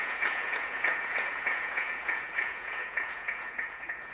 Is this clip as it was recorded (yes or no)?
no